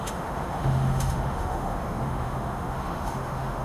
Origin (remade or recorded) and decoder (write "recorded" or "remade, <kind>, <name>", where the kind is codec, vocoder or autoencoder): remade, autoencoder, DAC-VAE